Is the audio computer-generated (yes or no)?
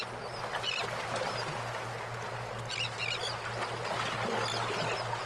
no